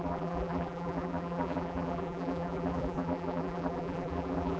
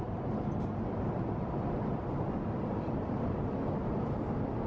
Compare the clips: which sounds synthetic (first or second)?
first